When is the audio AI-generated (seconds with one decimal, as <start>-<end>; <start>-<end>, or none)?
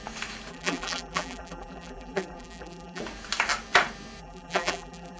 0.5-3.0; 4.2-5.2